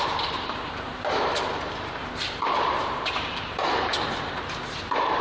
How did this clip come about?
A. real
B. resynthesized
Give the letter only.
B